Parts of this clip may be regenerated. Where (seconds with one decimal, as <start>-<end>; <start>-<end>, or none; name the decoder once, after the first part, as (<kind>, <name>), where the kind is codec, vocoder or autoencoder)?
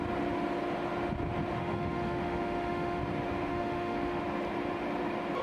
1.6-3.0 (autoencoder, DAC-VAE); 3.5-4.2